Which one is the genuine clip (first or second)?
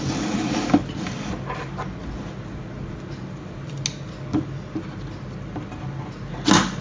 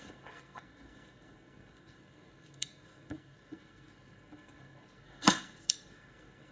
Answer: first